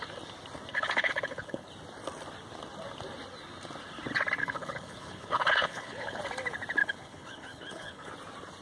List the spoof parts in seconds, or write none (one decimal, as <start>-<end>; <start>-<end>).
0.7-1.7; 4.4-6.2; 6.8-8.1